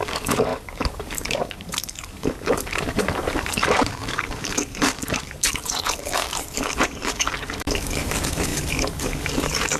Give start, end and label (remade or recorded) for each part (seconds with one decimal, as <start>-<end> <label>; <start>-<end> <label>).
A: 0.0-9.8 remade